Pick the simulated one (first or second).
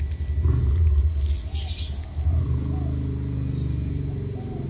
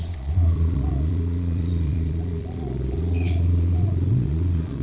second